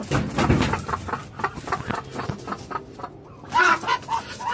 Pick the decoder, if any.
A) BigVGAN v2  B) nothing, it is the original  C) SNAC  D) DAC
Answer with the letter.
B